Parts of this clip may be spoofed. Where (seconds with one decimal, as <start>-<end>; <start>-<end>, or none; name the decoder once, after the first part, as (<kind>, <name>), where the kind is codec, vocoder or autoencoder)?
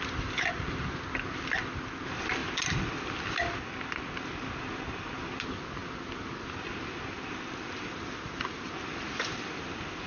none